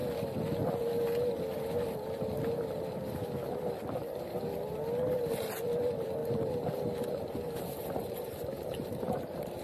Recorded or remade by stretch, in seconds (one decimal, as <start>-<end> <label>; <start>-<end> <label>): 0.0-3.2 recorded; 3.2-9.6 remade